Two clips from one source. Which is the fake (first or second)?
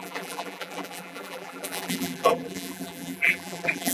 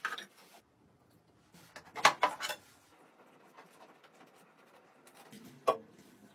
first